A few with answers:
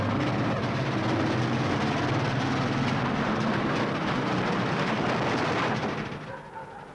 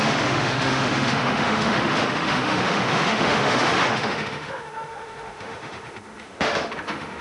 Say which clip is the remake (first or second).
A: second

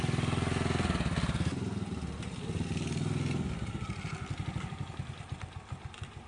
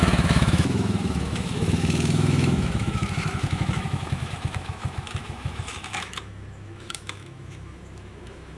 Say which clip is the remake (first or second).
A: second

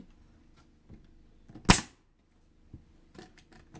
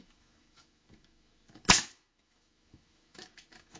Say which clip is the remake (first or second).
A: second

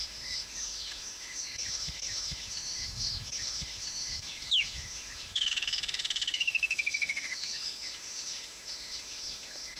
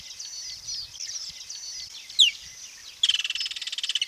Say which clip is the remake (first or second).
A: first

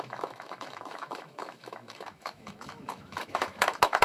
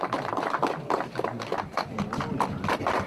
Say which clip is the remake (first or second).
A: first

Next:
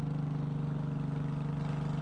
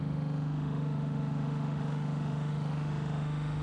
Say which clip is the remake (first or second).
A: second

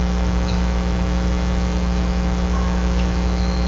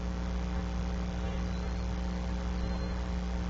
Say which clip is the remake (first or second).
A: first